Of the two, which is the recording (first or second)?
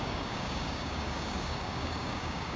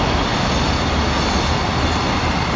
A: second